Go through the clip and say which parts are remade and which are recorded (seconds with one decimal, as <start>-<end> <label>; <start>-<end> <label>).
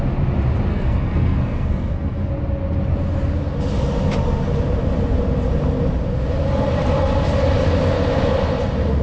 0.0-0.7 recorded; 0.7-2.3 remade; 2.3-9.0 recorded